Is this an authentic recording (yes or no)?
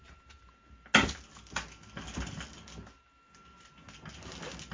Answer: yes